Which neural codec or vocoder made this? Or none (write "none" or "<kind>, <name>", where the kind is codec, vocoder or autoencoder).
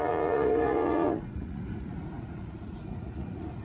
vocoder, Vocos